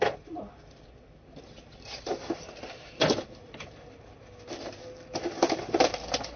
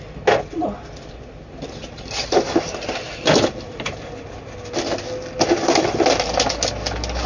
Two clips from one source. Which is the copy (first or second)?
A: first